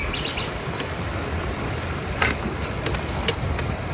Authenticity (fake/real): real